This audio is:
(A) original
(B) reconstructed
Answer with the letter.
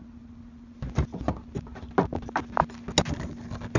A